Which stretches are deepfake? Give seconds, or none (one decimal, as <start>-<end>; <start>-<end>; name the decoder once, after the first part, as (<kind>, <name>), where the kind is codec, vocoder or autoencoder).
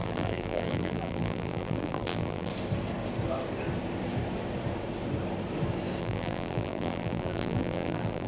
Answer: 0.0-2.5 (vocoder, BigVGAN v2); 6.0-8.3